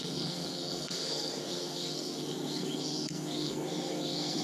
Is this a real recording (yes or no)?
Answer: no